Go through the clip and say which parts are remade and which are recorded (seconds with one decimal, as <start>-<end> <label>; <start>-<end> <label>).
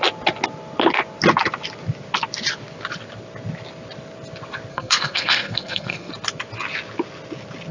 0.0-4.7 recorded; 4.7-6.1 remade; 6.1-7.7 recorded